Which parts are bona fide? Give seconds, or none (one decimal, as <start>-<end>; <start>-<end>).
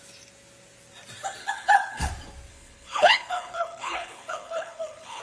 0.0-1.4; 2.1-2.5